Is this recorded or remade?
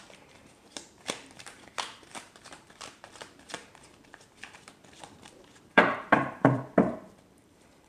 remade